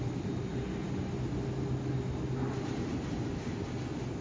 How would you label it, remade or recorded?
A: recorded